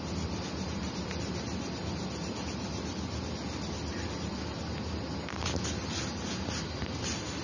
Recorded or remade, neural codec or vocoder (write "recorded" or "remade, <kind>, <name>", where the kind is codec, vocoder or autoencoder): recorded